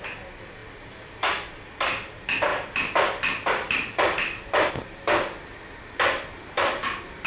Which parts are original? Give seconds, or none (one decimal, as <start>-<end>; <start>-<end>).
0.0-2.5; 4.7-7.3